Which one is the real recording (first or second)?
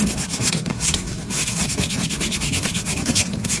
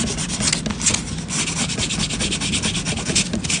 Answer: second